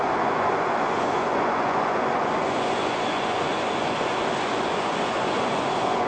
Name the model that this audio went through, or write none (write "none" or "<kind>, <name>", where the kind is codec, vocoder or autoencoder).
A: vocoder, Vocos